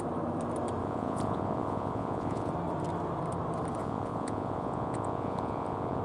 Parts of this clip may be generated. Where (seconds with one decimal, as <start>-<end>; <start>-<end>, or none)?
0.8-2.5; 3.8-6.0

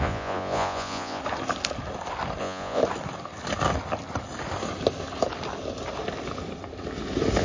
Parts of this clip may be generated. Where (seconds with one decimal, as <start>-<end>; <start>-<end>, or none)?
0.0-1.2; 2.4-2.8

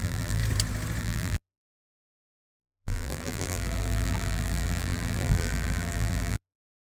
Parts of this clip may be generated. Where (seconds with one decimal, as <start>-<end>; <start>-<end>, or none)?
0.0-0.4; 1.0-6.9

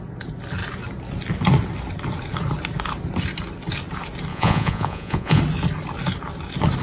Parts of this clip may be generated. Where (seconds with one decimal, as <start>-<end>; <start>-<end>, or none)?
4.3-5.4

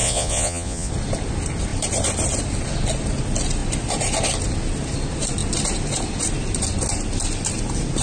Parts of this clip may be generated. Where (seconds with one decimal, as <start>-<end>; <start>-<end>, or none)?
0.0-0.9